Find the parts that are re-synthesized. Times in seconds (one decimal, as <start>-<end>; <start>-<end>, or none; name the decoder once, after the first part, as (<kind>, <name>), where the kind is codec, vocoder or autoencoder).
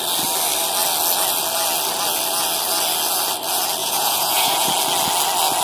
3.8-4.7 (vocoder, Vocos)